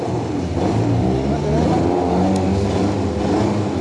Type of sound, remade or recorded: recorded